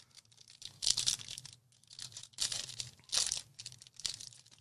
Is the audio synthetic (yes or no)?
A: no